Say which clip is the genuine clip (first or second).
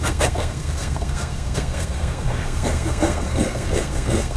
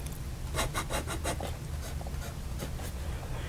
second